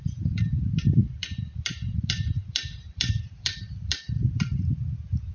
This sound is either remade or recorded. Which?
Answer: remade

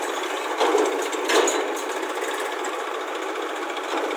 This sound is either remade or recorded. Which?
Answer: recorded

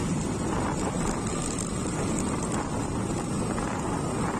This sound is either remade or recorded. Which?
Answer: recorded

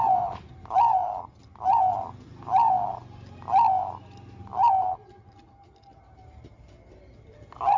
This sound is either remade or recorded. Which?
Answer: recorded